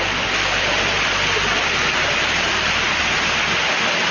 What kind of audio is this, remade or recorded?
recorded